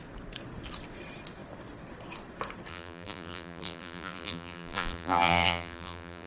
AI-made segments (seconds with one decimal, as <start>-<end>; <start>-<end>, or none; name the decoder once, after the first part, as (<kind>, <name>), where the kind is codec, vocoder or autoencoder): 2.7-6.3 (vocoder, BigVGAN v2)